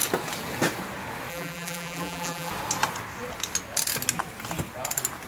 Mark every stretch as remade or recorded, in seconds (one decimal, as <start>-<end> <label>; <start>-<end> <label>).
0.0-1.3 recorded; 1.3-2.5 remade; 2.5-5.3 recorded